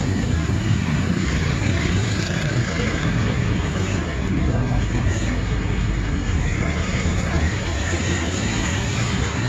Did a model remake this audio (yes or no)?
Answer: yes